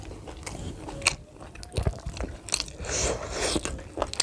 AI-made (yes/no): no